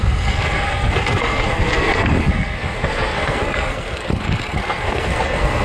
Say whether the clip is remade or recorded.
remade